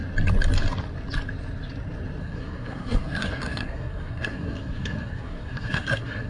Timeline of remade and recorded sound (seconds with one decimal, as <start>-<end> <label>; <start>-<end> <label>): 0.0-2.2 recorded; 2.2-6.3 remade